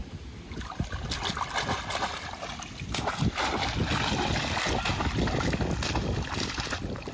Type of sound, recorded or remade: recorded